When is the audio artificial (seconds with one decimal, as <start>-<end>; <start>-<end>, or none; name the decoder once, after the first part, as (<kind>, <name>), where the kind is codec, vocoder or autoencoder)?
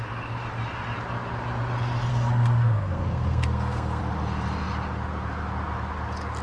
2.1-4.0 (codec, SNAC)